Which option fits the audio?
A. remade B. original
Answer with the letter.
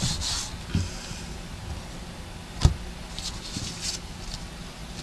B